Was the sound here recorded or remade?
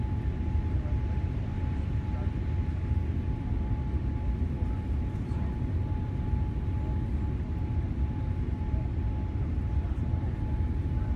recorded